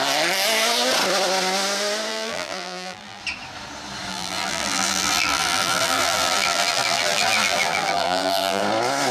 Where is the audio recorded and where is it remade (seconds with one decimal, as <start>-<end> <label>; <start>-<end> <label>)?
0.0-2.1 recorded; 2.1-3.2 remade; 3.2-4.1 recorded; 4.1-8.6 remade; 8.6-9.1 recorded